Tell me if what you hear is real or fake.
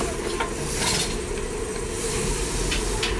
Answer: real